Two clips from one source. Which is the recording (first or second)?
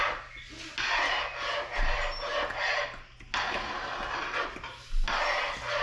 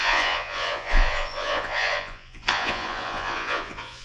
first